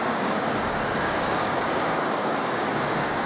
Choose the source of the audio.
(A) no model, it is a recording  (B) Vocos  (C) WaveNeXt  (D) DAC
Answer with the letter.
D